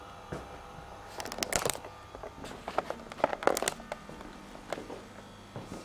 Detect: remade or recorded recorded